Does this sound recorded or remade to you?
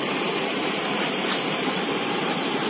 remade